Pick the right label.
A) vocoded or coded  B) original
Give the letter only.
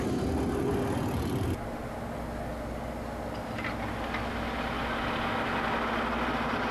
B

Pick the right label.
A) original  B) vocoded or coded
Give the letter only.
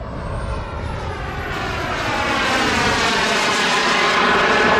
A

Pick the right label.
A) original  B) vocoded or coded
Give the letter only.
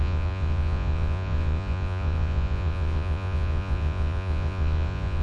B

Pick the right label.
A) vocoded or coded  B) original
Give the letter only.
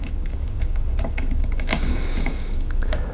A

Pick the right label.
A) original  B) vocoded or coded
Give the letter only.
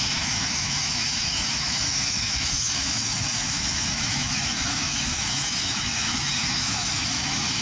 B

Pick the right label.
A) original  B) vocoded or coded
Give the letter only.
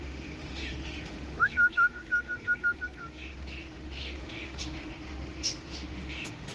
B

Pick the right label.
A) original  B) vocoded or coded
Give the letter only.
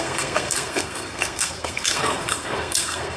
B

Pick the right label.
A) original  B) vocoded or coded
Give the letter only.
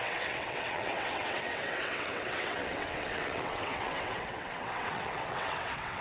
B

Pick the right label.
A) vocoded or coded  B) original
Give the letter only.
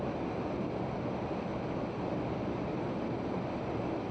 B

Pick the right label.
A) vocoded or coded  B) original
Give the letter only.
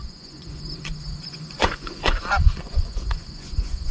A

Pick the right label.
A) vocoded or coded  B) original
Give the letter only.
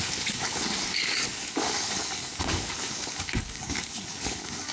A